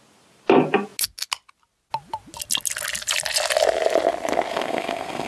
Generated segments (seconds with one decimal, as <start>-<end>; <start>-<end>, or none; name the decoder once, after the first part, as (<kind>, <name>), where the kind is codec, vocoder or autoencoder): 4.5-5.3 (codec, SNAC)